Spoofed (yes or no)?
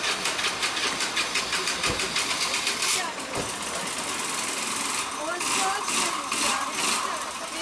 no